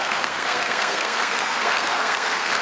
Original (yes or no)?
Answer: no